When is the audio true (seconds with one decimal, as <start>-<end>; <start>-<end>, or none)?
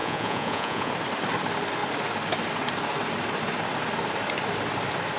0.9-5.2